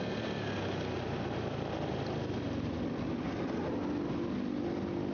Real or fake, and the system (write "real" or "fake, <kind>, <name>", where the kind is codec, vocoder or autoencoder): real